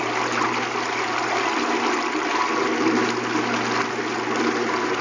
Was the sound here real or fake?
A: real